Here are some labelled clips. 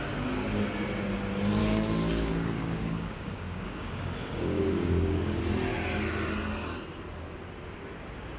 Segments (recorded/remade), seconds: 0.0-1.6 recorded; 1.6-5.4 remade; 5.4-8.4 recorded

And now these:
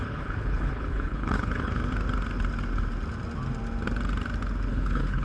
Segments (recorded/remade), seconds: 0.0-1.8 remade; 1.8-4.7 recorded; 4.7-5.2 remade

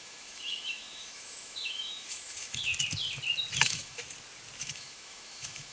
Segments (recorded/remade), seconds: 0.0-2.7 remade; 2.7-3.6 recorded; 3.6-4.0 remade; 4.0-4.6 recorded; 4.6-5.7 remade

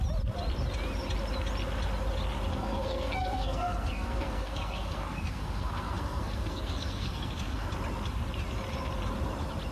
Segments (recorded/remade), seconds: 0.0-2.5 recorded; 2.5-7.7 remade; 7.7-9.7 recorded

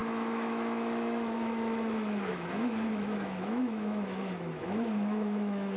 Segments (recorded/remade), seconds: 0.0-5.8 remade